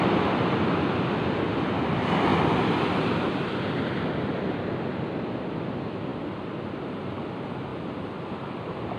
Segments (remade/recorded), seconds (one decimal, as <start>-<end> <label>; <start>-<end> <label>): 0.0-9.0 recorded